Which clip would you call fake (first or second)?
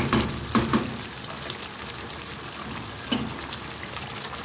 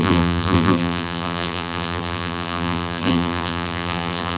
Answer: second